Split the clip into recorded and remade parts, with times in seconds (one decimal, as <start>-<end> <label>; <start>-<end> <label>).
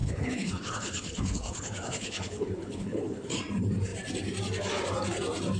0.0-3.4 remade; 3.4-5.6 recorded